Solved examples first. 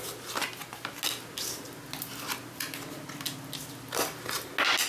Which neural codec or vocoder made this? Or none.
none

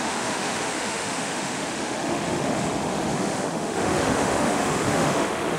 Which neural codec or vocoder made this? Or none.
autoencoder, DAC-VAE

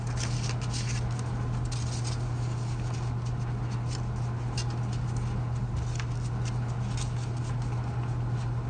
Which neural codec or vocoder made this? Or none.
none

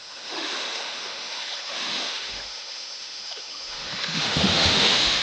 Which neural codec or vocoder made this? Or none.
autoencoder, DAC-VAE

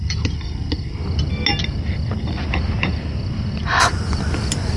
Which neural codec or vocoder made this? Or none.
none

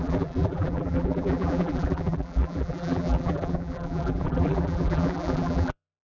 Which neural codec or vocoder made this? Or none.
vocoder, BigVGAN v2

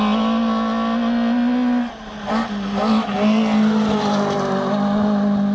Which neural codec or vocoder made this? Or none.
none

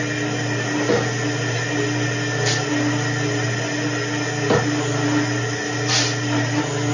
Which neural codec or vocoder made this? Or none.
none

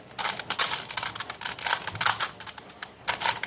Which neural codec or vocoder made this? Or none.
none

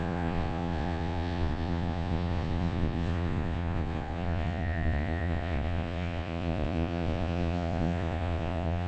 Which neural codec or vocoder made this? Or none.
vocoder, Vocos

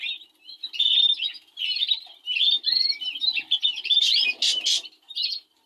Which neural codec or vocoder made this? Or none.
none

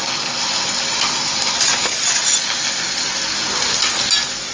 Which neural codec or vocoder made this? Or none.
none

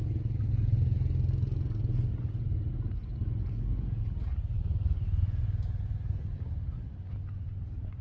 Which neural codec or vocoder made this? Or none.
none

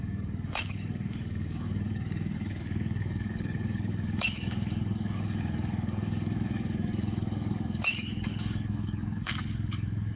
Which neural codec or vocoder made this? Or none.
codec, DAC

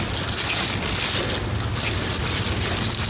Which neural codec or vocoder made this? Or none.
none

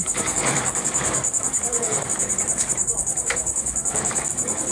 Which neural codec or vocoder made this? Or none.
codec, DAC